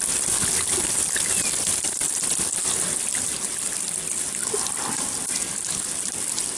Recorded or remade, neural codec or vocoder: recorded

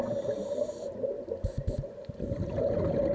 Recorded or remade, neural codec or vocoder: recorded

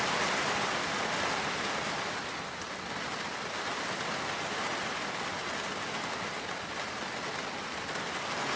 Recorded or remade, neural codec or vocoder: recorded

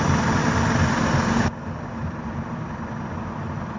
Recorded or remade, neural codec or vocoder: recorded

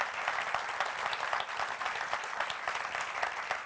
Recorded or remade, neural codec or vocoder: recorded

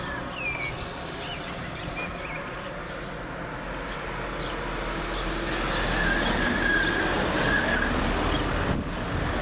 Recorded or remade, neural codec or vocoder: recorded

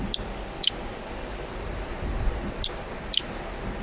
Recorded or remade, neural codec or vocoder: recorded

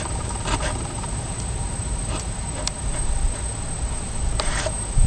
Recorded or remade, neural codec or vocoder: remade, vocoder, BigVGAN v2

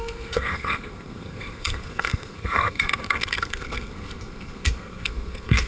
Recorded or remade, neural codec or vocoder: remade, codec, SNAC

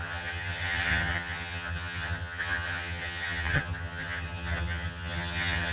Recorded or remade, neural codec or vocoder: remade, vocoder, HiFi-GAN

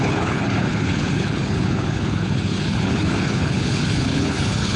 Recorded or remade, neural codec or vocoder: remade, codec, HILCodec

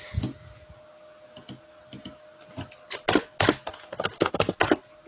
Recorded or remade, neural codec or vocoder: recorded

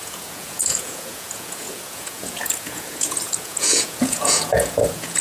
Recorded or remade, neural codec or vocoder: remade, vocoder, Vocos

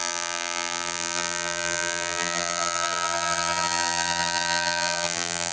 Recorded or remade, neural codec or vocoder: remade, vocoder, BigVGAN v2